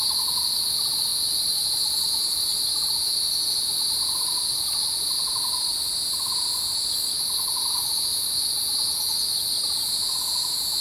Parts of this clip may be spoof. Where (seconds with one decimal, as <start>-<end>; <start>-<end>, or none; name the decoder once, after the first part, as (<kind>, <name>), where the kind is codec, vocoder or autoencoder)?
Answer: none